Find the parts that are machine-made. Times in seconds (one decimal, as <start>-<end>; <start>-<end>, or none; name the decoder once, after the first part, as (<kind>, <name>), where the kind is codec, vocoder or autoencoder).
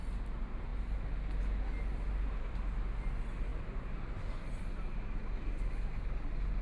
none